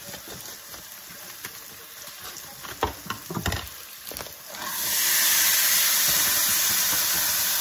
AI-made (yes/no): no